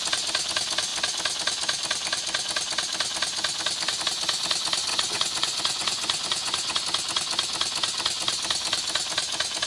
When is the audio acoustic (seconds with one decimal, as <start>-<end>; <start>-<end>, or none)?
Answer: 0.0-4.9; 6.8-9.7